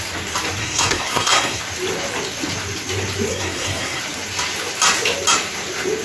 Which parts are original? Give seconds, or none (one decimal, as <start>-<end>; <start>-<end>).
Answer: 0.0-0.6; 1.6-3.3; 4.0-6.0